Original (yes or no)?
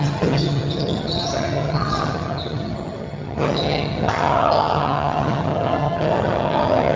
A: no